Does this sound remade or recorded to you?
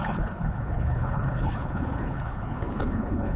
remade